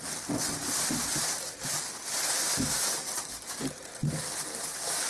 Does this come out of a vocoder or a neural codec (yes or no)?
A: no